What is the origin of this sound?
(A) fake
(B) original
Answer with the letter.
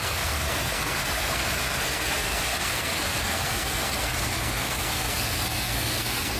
A